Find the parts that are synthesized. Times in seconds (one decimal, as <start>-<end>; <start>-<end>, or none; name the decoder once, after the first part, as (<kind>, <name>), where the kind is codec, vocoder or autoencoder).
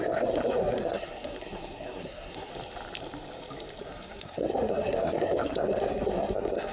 0.0-2.5 (codec, SNAC); 3.8-6.7